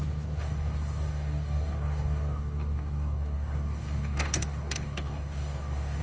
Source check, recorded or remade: remade